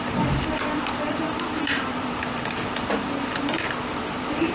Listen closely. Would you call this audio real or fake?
fake